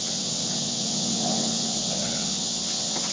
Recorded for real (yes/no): no